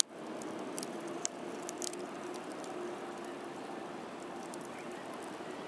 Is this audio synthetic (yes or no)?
yes